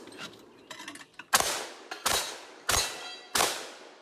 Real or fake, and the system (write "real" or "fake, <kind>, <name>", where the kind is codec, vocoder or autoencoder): real